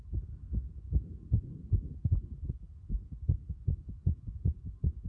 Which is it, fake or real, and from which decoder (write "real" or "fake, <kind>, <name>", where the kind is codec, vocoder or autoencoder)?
real